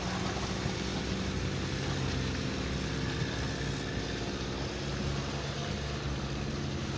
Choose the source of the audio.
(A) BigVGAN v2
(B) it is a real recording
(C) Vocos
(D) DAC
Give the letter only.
B